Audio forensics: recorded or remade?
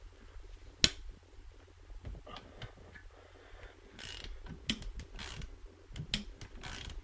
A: recorded